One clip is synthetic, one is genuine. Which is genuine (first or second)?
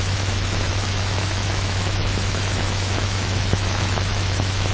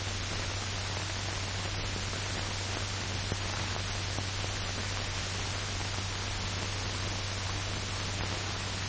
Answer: second